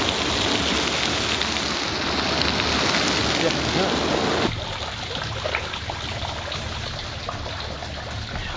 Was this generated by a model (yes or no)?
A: no